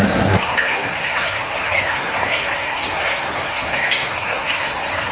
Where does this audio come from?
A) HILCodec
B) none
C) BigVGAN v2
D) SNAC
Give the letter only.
D